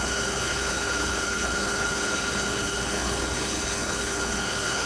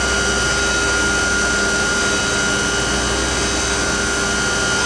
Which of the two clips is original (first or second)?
second